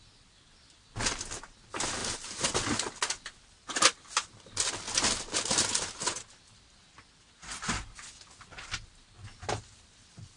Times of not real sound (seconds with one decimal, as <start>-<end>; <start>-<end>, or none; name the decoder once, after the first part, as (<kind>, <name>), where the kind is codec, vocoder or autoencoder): none